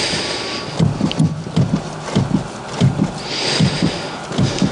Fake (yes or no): no